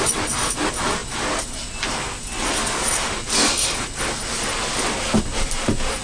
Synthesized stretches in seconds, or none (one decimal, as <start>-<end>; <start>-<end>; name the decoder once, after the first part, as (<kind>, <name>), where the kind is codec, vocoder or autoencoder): none